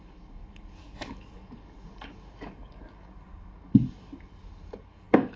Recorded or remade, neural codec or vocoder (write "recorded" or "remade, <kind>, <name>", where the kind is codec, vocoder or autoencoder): remade, codec, DAC